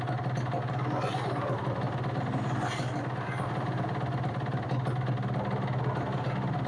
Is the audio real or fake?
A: real